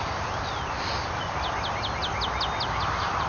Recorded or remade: recorded